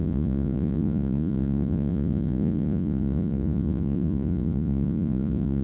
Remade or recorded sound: remade